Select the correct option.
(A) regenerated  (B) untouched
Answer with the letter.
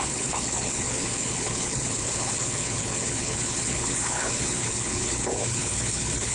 A